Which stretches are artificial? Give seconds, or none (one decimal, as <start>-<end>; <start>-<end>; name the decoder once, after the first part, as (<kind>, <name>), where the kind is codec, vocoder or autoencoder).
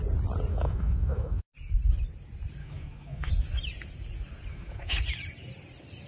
0.5-1.4 (autoencoder, DAC-VAE); 2.6-3.3; 4.5-5.0